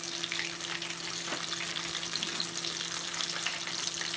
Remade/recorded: recorded